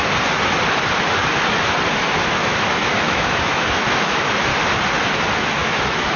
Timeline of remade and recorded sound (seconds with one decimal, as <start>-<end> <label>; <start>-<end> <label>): 0.0-2.3 recorded; 2.3-4.5 remade; 4.5-5.5 recorded; 5.5-6.2 remade